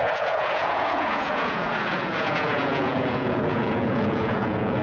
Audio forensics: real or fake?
fake